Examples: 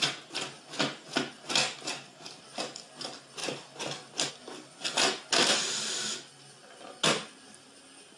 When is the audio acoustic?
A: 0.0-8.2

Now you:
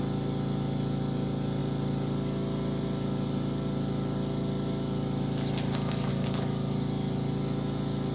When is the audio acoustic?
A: 0.0-8.1